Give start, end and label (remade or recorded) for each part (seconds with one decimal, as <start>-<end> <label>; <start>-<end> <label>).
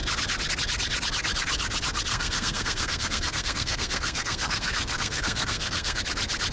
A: 0.0-2.1 recorded; 2.1-6.0 remade; 6.0-6.5 recorded